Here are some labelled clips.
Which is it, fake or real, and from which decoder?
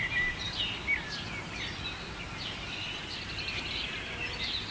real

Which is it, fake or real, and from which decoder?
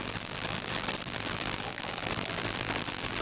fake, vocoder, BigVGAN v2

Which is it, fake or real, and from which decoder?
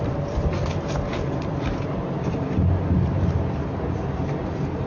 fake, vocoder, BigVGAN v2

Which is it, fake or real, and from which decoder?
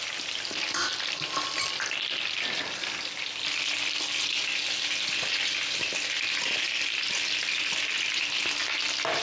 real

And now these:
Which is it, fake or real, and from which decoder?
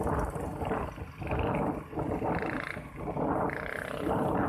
real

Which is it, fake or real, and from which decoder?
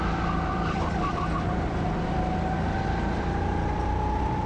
fake, vocoder, BigVGAN v2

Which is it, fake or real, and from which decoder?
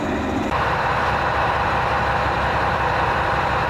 fake, vocoder, BigVGAN v2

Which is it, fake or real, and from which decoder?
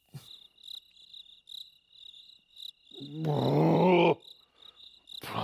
real